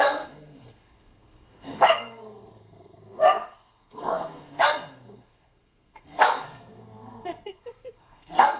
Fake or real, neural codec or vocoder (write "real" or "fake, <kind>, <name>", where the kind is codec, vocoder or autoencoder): fake, codec, SNAC